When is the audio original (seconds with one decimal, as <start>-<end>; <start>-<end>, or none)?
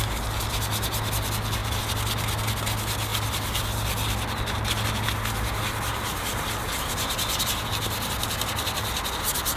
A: 0.0-9.6